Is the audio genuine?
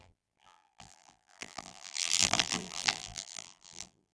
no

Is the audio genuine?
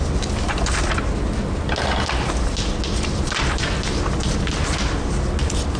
yes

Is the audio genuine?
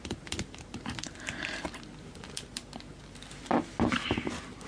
yes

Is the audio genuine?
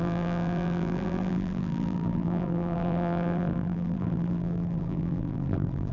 no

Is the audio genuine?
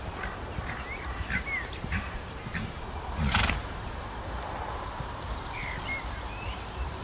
no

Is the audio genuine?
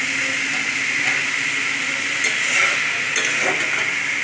yes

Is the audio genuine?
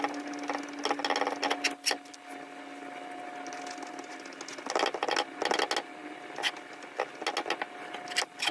yes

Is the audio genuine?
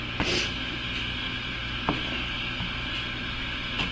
yes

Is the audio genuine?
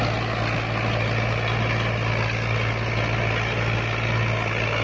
yes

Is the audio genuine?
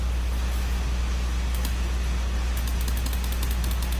yes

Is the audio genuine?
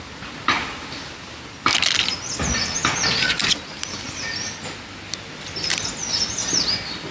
yes